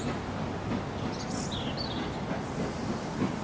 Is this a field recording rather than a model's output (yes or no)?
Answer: yes